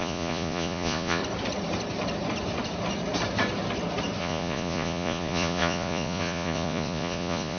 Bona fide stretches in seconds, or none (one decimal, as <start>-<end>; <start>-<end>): 1.2-4.2